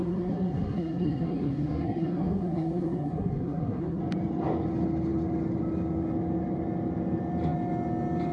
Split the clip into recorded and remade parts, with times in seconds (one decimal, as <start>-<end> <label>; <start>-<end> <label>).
0.0-4.0 remade; 4.0-8.3 recorded